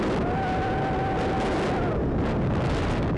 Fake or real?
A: real